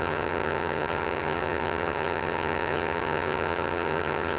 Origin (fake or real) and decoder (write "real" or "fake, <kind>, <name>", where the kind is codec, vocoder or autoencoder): fake, vocoder, HiFi-GAN